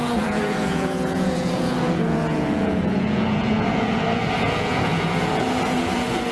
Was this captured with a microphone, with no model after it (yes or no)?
no